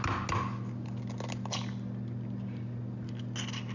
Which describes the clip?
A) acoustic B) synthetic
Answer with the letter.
A